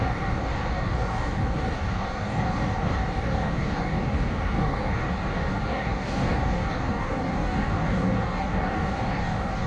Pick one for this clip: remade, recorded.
remade